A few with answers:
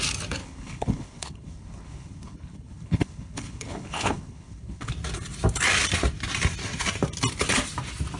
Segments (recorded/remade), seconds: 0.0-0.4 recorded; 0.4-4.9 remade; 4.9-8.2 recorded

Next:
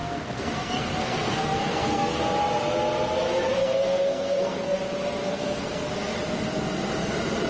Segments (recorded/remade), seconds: 0.0-2.2 remade; 2.2-3.6 recorded; 3.6-4.8 remade; 4.8-5.2 recorded; 5.2-5.9 remade; 5.9-7.5 recorded

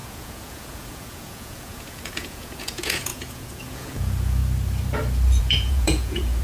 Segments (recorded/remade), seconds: 0.0-4.4 remade; 4.4-5.4 recorded; 5.4-6.4 remade

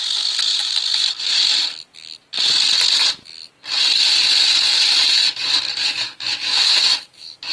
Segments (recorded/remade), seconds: 0.0-5.8 recorded; 5.8-7.5 remade

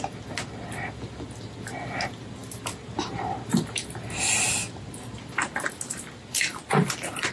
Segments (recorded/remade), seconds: 0.0-7.3 recorded

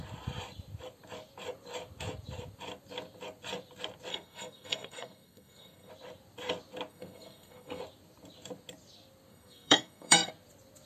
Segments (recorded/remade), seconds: 0.0-4.1 recorded; 4.1-5.9 remade; 5.9-6.9 recorded; 6.9-7.8 remade; 7.8-9.3 recorded; 9.3-10.3 remade; 10.3-10.9 recorded